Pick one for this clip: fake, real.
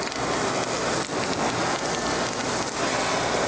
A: real